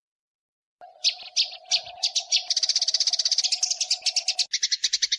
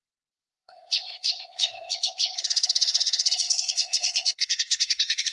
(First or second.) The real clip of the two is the first